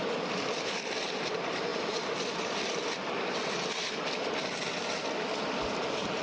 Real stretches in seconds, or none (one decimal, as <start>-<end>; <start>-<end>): 0.0-6.2